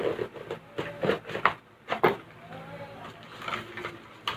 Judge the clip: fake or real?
real